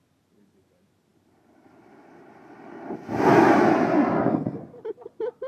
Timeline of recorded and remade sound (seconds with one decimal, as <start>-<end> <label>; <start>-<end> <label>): 0.0-5.5 recorded